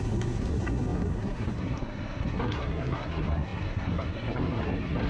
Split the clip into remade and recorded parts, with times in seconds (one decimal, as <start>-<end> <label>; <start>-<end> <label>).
0.0-5.1 remade